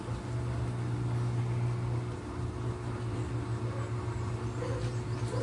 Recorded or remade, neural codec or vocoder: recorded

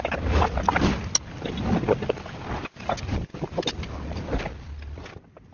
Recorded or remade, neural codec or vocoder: recorded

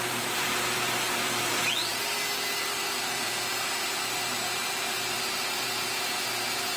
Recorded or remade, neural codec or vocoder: remade, vocoder, BigVGAN v2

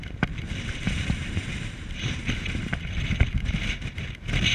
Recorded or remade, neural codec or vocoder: remade, vocoder, BigVGAN v2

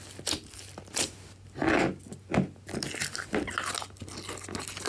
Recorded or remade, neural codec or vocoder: recorded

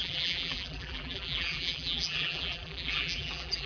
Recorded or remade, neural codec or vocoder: remade, vocoder, BigVGAN v2